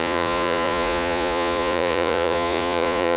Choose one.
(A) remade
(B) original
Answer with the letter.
A